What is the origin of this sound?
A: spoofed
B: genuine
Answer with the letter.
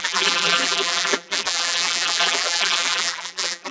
A